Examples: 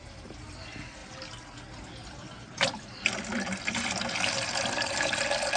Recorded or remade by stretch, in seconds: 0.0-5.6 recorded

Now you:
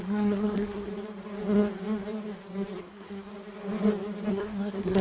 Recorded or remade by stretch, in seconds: 0.0-0.9 remade; 0.9-2.8 recorded; 2.8-3.3 remade; 3.3-4.3 recorded; 4.3-5.0 remade

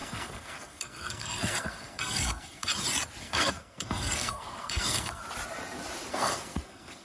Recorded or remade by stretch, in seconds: 0.0-2.7 remade; 2.7-3.2 recorded; 3.2-5.2 remade; 5.2-6.1 recorded; 6.1-7.0 remade

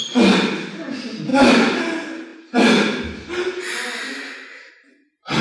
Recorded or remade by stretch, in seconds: 0.0-5.4 recorded

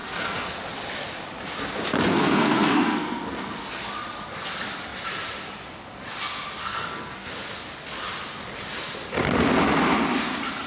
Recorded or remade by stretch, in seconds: 0.0-0.6 remade; 0.6-2.1 recorded; 2.1-3.9 remade; 3.9-6.6 recorded; 6.6-7.3 remade; 7.3-10.7 recorded